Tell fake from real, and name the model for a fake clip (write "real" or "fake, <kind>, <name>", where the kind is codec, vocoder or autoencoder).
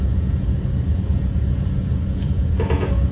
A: fake, vocoder, Vocos